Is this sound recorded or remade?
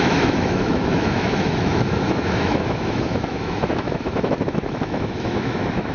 remade